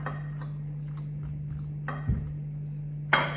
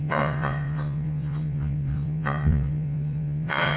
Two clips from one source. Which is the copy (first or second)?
second